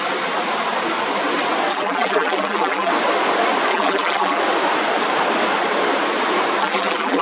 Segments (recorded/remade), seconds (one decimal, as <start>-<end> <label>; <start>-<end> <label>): 0.0-1.7 recorded; 1.7-2.9 remade; 2.9-3.7 recorded; 3.7-4.4 remade; 4.4-6.6 recorded; 6.6-7.2 remade